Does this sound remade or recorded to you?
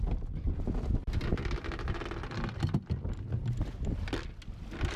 recorded